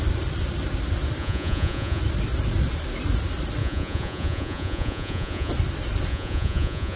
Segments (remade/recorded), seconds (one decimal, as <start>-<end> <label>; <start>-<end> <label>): 0.0-1.2 recorded; 1.2-2.0 remade; 2.0-3.6 recorded; 3.6-5.5 remade; 5.5-6.1 recorded; 6.1-7.0 remade